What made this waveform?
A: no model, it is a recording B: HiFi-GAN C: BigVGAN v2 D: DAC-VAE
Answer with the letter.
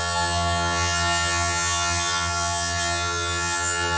B